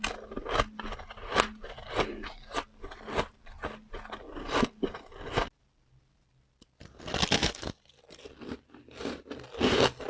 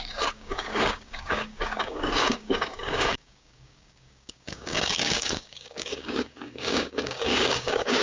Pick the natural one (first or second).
first